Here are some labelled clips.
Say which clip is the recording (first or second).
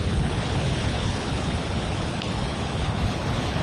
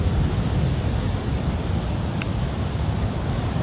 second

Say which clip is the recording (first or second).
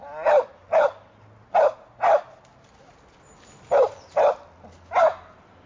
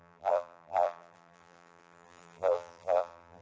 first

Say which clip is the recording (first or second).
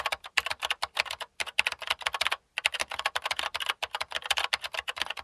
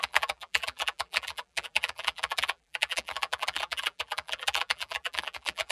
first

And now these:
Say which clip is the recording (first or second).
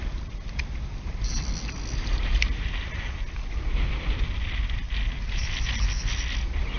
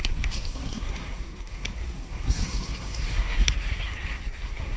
first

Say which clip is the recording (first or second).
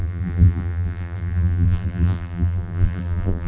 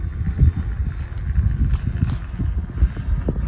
second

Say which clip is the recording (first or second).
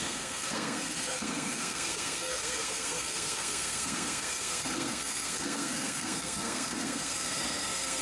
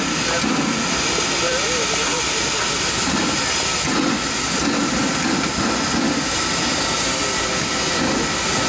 second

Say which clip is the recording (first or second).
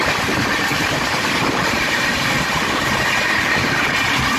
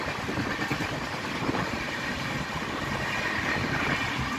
second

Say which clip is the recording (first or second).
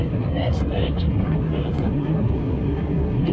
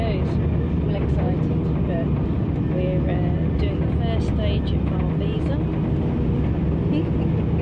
second